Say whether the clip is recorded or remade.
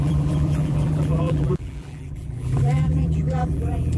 remade